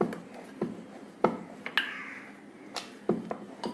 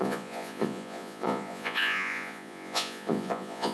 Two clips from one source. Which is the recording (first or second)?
first